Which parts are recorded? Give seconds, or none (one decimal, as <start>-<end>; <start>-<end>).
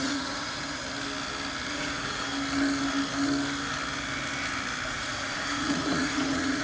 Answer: 0.8-1.7; 2.3-4.9